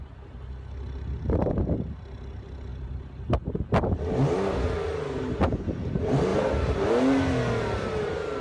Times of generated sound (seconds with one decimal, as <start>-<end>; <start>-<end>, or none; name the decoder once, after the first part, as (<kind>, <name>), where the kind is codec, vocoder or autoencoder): 6.3-6.9 (vocoder, BigVGAN v2)